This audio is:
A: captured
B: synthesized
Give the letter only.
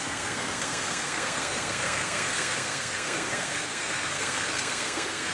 B